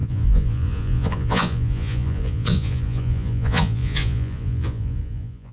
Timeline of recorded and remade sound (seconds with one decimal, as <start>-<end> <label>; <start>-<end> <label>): 0.0-5.5 remade